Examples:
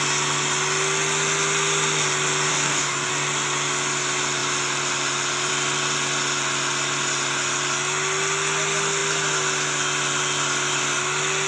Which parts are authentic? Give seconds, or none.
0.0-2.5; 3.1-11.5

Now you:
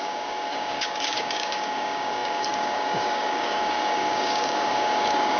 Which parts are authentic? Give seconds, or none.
none

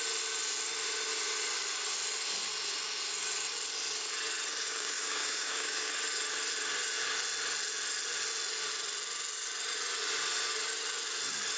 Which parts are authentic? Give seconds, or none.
0.0-4.6; 5.9-11.6